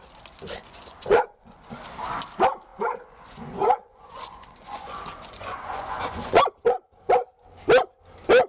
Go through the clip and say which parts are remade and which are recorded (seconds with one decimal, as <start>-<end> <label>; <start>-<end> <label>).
0.0-0.6 recorded; 0.6-1.7 remade; 1.7-2.7 recorded; 2.7-6.4 remade; 6.4-8.5 recorded